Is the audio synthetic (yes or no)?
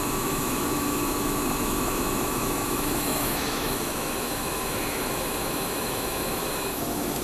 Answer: yes